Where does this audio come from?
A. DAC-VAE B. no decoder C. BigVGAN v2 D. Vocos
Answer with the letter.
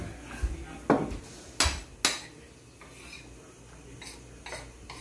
B